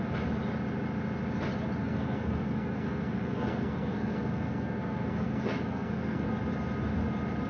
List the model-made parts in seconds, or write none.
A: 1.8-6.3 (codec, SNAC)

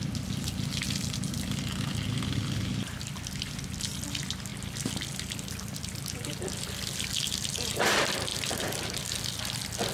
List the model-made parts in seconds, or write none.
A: none

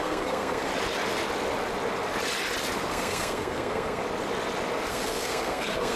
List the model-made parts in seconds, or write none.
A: 0.0-0.7 (codec, SNAC); 2.9-4.0; 4.9-6.0

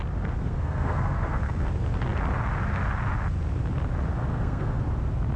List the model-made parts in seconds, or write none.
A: 0.4-1.7 (codec, SNAC); 4.2-4.8

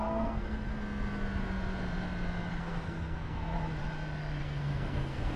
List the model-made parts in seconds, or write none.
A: 0.0-0.7 (codec, SNAC); 2.5-3.4; 4.4-5.4

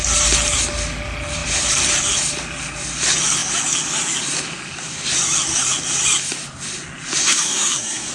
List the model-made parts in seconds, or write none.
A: 7.2-8.1 (codec, SNAC)

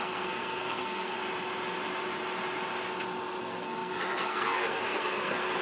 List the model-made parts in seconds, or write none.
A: 0.0-1.2 (codec, SNAC); 3.4-5.6

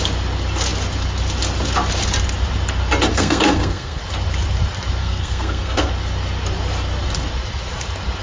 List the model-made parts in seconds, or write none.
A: 3.1-4.0 (codec, SNAC); 5.0-5.9